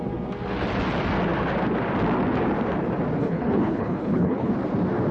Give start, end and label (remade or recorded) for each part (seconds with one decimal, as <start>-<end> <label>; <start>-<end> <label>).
0.0-3.2 recorded; 3.2-4.5 remade; 4.5-5.1 recorded